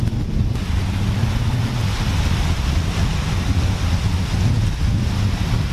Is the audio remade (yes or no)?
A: no